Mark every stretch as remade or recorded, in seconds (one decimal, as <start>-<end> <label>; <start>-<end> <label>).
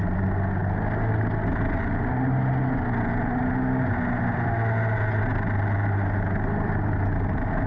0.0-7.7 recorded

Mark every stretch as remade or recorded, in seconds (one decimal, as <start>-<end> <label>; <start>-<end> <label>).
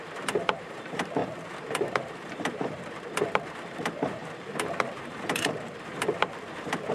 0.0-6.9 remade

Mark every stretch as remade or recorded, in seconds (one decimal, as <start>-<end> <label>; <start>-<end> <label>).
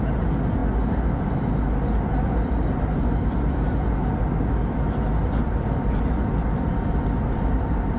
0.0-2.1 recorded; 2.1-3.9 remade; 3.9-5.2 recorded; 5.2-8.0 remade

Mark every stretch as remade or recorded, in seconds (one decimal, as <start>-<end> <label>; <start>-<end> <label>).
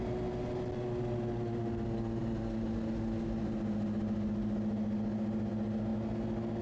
0.0-6.6 recorded